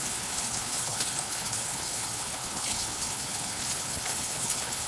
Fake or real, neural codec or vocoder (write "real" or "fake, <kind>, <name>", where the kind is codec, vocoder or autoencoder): fake, codec, HILCodec